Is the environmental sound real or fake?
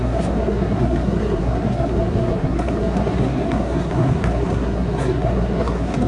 fake